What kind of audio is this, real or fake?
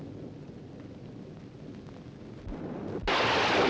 real